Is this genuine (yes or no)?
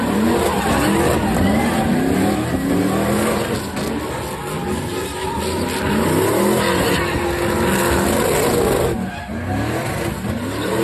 yes